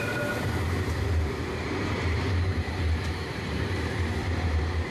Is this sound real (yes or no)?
no